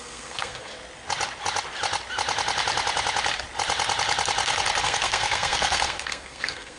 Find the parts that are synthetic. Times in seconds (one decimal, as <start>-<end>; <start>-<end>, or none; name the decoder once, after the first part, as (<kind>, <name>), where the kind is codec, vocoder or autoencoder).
0.0-0.7 (codec, SNAC); 4.8-6.8